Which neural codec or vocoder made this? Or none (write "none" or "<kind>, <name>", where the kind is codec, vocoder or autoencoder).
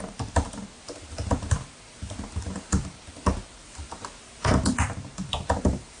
none